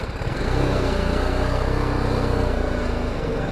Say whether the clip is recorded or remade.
remade